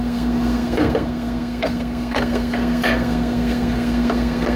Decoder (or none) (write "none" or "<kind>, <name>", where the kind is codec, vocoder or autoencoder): codec, SNAC